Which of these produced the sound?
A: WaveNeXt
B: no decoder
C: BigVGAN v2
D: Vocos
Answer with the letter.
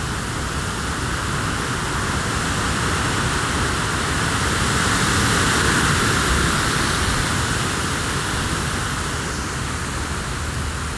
B